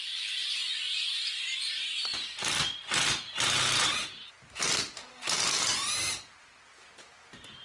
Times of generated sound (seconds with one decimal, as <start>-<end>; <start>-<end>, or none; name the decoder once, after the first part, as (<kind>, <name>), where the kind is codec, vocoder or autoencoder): none